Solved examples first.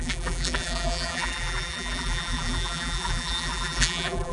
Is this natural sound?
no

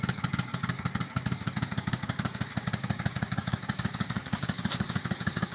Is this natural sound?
no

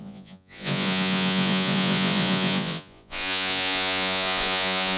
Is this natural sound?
no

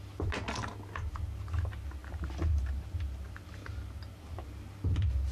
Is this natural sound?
yes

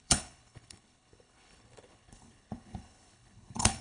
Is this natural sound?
no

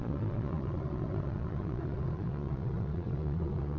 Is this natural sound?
no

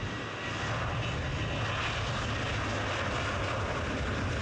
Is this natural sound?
yes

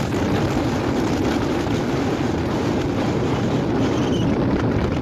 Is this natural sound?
yes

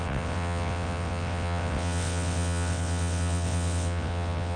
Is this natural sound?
no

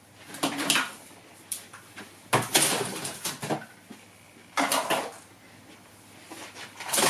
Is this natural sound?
yes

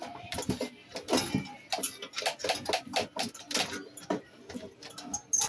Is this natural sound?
yes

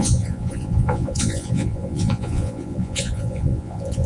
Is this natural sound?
no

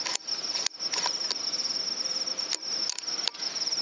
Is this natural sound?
yes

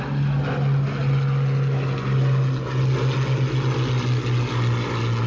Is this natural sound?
yes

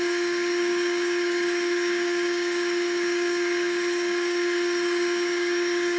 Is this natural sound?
no